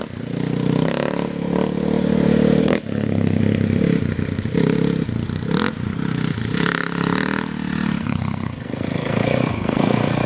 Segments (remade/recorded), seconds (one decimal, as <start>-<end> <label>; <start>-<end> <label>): 0.0-2.6 recorded; 2.6-3.4 remade; 3.4-8.0 recorded; 8.0-10.3 remade